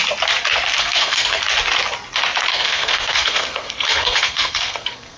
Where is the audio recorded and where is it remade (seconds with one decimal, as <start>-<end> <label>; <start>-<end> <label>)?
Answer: 0.0-0.8 recorded; 0.8-1.4 remade; 1.4-2.5 recorded; 2.5-5.2 remade